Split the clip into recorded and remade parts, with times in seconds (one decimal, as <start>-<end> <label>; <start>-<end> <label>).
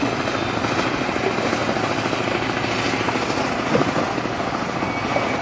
0.0-5.4 recorded